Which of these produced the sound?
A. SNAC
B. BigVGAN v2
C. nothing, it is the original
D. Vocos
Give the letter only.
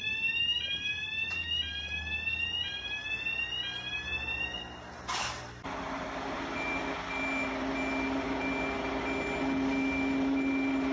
C